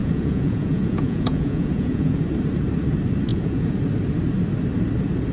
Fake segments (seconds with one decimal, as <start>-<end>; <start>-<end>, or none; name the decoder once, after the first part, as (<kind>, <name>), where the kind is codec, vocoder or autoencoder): 0.0-2.2 (vocoder, Vocos); 3.3-3.8